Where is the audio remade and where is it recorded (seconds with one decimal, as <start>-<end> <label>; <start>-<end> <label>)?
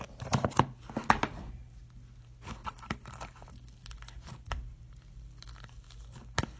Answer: 0.0-6.6 recorded